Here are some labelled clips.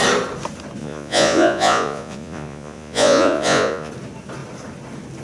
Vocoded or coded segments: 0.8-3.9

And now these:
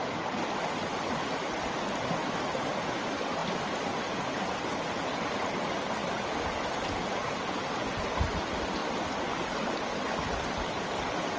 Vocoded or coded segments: 6.0-6.9

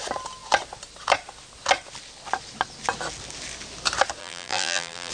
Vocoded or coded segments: 4.2-5.1

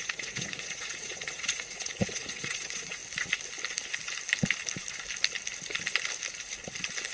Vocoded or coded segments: 0.0-3.0

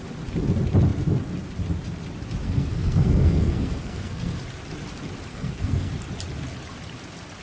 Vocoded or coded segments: 2.4-4.4; 5.3-5.9

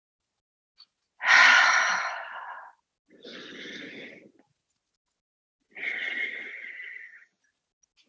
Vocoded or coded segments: 6.5-7.4

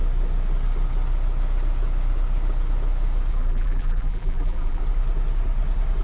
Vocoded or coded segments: 3.3-4.8

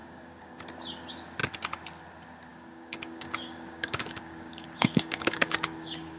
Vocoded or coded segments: 0.0-0.6; 2.5-6.2